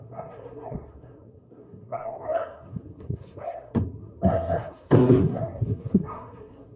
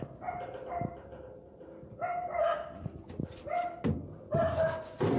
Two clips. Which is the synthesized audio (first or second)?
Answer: first